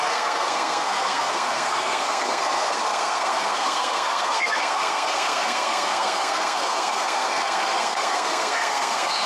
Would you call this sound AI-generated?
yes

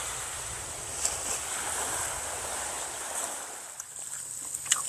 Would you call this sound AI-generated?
no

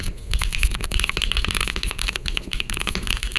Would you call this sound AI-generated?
yes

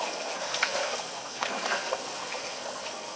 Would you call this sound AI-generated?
yes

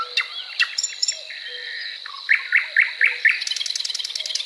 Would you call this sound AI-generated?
no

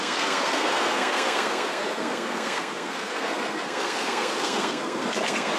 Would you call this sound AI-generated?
yes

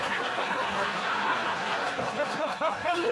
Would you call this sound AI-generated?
yes